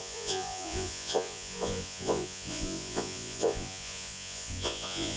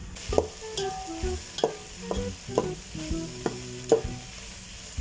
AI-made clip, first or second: first